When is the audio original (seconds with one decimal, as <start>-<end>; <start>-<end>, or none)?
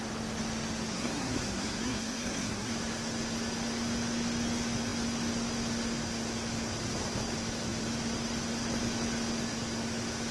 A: 0.0-0.9; 2.7-10.3